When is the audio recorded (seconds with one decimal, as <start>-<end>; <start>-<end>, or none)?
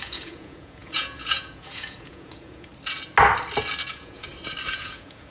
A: 2.7-3.9; 4.3-4.8